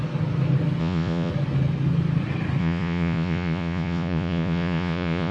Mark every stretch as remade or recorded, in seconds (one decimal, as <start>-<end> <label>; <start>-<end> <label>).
0.0-0.8 recorded; 0.8-1.3 remade; 1.3-2.6 recorded; 2.6-5.3 remade